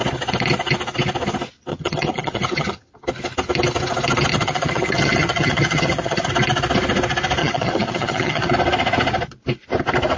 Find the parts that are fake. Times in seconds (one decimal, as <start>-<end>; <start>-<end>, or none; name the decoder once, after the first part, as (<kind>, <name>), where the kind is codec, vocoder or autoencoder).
1.7-2.9 (vocoder, HiFi-GAN); 4.3-6.3; 7.4-8.5